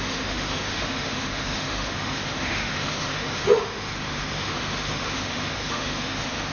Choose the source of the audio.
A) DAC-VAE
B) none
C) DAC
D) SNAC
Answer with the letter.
A